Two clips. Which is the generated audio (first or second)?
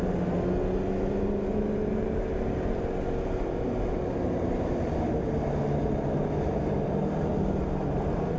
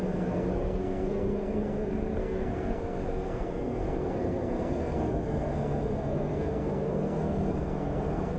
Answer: second